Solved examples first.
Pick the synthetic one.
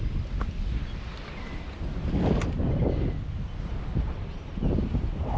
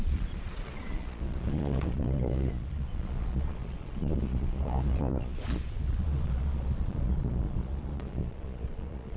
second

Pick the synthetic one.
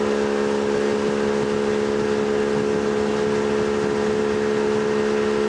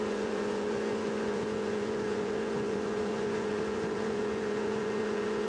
second